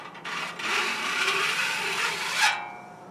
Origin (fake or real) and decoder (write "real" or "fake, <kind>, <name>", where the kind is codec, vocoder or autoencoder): real